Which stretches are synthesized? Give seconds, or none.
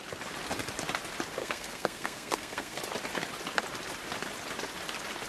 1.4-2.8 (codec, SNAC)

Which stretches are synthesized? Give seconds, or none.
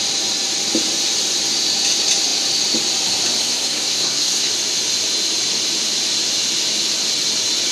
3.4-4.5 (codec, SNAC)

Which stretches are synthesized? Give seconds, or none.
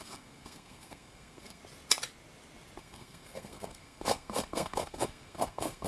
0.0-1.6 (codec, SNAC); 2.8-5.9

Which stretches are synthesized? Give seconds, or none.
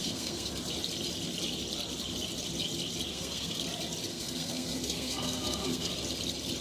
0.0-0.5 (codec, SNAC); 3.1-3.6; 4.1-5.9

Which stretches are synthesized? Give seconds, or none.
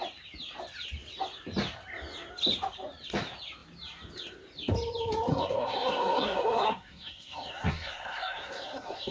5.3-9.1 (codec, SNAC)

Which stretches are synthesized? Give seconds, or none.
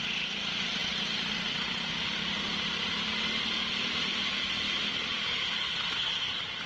none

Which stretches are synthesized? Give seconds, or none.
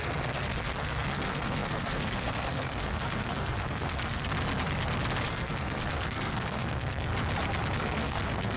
0.0-4.3 (codec, SNAC); 5.3-7.1; 7.8-8.6